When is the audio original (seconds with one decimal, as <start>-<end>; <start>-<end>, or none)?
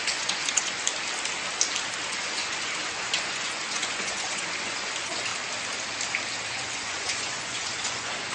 0.9-2.1; 5.3-6.5